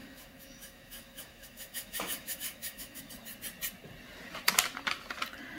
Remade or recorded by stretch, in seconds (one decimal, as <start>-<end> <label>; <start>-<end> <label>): 0.0-3.1 remade; 3.1-5.6 recorded